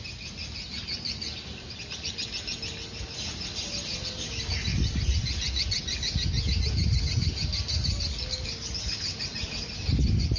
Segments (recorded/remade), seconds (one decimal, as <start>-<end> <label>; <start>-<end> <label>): 0.0-10.4 recorded